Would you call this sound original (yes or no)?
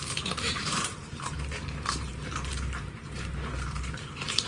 no